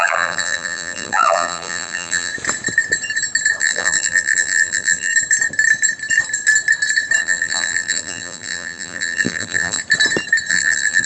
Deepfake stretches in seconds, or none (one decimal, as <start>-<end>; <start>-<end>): 0.0-2.3; 3.6-5.1; 7.2-9.8; 10.5-11.1